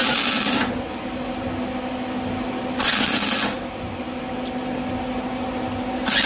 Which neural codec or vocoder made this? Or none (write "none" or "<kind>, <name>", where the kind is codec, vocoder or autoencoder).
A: none